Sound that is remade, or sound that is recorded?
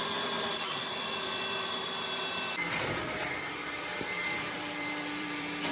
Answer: remade